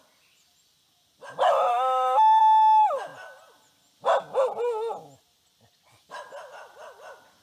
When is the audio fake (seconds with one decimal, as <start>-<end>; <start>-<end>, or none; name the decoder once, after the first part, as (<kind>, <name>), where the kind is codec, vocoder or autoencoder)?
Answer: 1.7-2.4 (autoencoder, DAC-VAE)

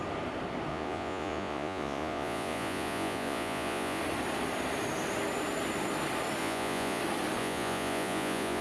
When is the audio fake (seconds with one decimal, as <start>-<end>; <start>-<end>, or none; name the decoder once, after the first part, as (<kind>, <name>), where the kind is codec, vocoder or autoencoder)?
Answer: 0.7-4.0 (vocoder, Vocos); 6.4-7.0; 7.4-8.6

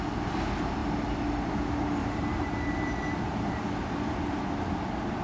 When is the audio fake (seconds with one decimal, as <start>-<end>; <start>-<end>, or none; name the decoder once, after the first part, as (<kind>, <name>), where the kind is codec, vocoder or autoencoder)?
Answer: 2.0-3.5 (vocoder, BigVGAN v2)

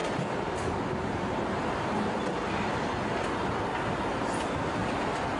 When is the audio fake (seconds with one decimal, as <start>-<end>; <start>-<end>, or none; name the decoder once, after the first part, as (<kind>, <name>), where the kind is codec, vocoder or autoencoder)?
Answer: none

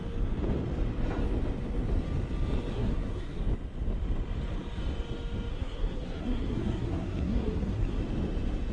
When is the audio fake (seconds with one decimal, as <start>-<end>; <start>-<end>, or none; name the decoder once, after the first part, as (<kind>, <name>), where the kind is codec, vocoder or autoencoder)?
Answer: 2.7-3.4 (codec, SNAC); 5.5-8.0